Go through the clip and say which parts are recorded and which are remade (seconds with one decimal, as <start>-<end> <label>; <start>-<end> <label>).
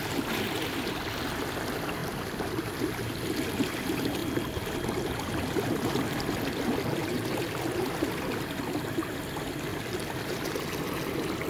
0.0-4.2 recorded; 4.2-8.0 remade; 8.0-9.7 recorded; 9.7-10.5 remade; 10.5-11.5 recorded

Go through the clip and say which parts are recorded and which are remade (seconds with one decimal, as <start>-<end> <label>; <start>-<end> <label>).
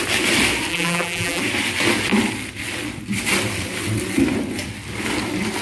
0.0-0.7 recorded; 0.7-1.4 remade; 1.4-5.6 recorded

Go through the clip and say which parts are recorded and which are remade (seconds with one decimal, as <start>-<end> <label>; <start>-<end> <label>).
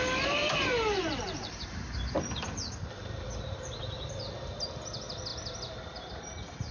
0.0-0.4 recorded; 0.4-4.1 remade; 4.1-6.7 recorded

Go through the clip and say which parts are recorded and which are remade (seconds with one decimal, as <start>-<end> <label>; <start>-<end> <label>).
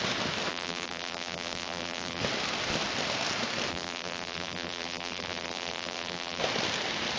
0.0-0.5 recorded; 0.5-2.2 remade; 2.2-3.7 recorded; 3.7-6.4 remade; 6.4-7.2 recorded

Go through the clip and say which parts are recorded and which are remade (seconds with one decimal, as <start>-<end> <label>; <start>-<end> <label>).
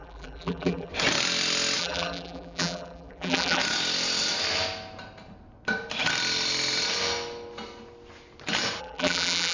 0.0-0.9 remade; 0.9-1.8 recorded; 1.8-3.6 remade; 3.6-8.8 recorded; 8.8-9.5 remade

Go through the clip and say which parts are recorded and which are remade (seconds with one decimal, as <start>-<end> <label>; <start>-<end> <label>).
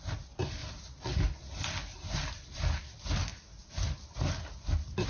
0.0-0.6 recorded; 0.6-1.2 remade; 1.2-2.0 recorded; 2.0-2.6 remade; 2.6-3.3 recorded; 3.3-5.1 remade